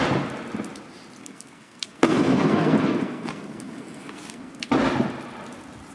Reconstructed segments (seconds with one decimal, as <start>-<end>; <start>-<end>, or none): 1.2-4.7